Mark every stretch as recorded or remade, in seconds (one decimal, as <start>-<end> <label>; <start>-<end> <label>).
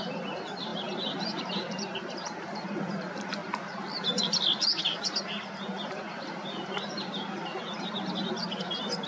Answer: 0.0-7.5 remade; 7.5-9.1 recorded